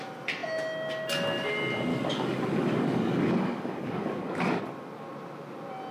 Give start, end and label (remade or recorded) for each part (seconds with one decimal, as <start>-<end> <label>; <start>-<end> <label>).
0.0-1.9 recorded; 1.9-4.6 remade; 4.6-5.9 recorded